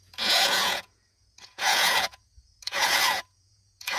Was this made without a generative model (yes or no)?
no